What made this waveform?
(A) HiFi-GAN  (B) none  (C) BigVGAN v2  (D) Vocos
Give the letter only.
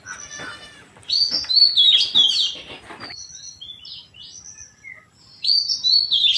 B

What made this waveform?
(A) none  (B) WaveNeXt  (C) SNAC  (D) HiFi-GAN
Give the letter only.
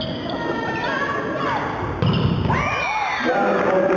A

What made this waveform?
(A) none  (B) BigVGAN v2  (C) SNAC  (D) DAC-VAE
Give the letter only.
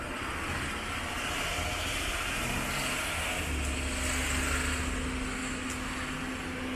A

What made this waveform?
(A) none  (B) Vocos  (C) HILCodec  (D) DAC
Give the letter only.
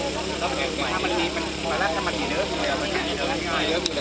A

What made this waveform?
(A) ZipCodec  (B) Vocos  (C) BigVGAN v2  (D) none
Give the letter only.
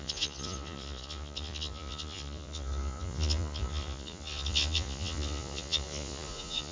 B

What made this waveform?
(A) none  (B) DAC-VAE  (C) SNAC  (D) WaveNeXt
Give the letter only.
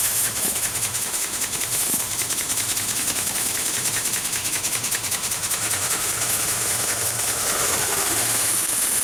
B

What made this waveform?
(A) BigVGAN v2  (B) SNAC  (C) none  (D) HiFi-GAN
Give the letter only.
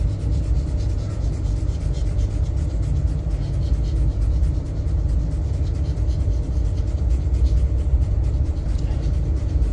C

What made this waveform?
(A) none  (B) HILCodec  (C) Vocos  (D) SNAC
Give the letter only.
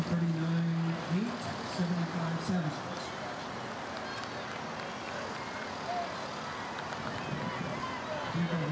A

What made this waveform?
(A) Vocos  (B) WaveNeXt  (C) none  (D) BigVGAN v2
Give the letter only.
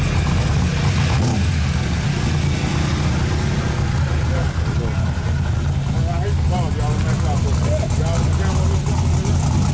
C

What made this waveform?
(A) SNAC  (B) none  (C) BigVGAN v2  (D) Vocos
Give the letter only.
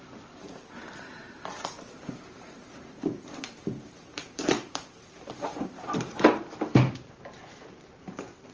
C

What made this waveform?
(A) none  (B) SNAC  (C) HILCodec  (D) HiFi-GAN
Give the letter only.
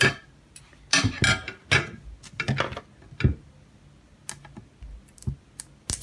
A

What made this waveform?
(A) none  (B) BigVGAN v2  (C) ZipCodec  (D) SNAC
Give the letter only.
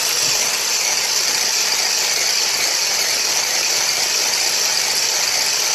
A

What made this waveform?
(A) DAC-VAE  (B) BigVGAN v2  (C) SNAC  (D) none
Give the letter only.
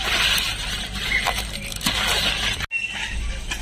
D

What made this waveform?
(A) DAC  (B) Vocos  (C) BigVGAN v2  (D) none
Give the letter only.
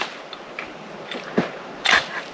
D